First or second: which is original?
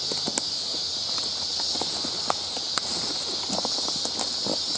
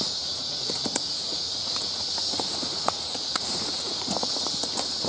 first